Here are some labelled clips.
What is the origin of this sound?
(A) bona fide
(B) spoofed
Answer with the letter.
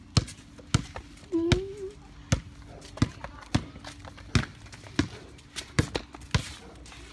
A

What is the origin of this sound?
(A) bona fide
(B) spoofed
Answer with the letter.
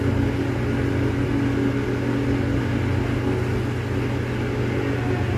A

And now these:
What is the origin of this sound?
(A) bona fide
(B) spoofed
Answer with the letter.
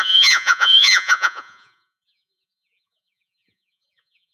B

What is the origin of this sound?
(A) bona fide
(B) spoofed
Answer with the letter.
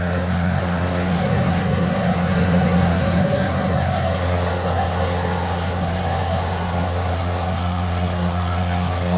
B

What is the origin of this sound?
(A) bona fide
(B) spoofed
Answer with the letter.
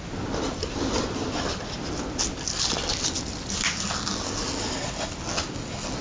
A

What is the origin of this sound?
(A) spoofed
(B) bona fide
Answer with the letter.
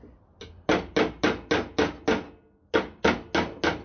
B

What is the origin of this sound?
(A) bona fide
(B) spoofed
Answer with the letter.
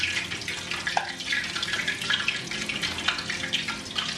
A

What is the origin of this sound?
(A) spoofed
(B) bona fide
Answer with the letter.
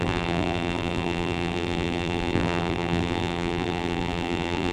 A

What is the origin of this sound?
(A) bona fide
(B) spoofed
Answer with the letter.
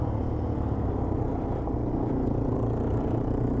A